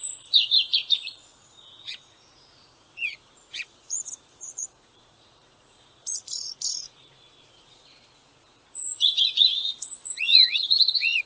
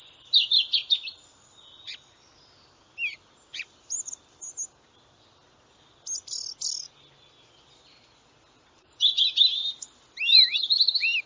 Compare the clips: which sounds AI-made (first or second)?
first